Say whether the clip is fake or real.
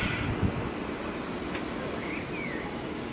real